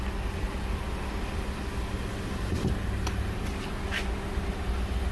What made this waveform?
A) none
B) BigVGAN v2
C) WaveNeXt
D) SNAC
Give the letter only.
A